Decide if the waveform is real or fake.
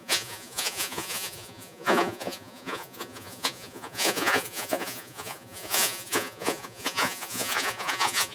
fake